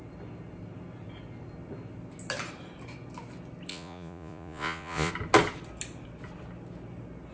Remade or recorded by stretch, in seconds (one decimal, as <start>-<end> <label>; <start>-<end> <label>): 0.0-3.7 recorded; 3.7-5.1 remade; 5.1-7.3 recorded